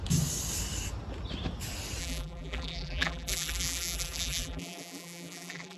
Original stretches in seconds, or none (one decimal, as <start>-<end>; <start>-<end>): 0.0-2.0